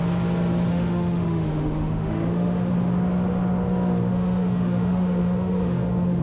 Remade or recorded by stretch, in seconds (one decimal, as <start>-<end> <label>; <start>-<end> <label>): 0.0-0.7 recorded; 0.7-2.7 remade; 2.7-4.1 recorded; 4.1-6.2 remade